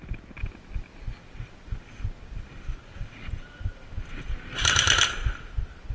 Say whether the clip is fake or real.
real